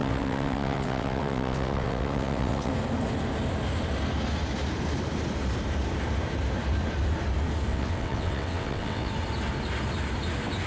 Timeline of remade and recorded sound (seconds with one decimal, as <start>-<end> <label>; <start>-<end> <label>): 0.0-2.7 remade; 2.7-7.7 recorded; 7.7-9.1 remade; 9.1-10.7 recorded